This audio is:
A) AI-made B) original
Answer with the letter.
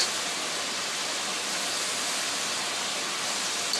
B